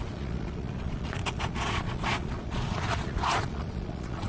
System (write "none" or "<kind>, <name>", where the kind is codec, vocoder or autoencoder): vocoder, Vocos